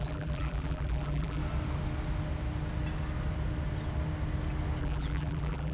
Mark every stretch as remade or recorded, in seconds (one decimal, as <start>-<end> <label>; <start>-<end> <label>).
0.0-1.4 remade; 1.4-4.8 recorded; 4.8-5.7 remade